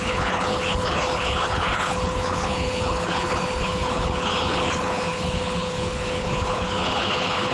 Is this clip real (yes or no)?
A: no